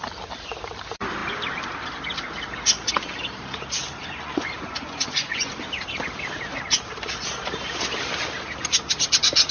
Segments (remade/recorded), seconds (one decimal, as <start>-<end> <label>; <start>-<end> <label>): 0.0-4.0 recorded; 4.0-5.5 remade; 5.5-9.5 recorded